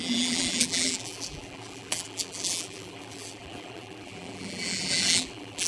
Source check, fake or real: fake